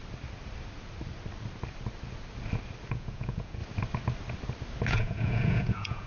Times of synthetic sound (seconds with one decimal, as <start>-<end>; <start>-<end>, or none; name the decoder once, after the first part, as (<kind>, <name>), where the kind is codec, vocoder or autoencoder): 2.9-3.6 (vocoder, Vocos); 4.9-6.1